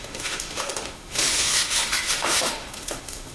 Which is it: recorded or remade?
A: remade